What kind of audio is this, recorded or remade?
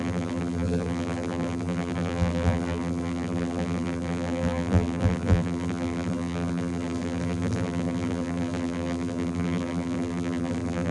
remade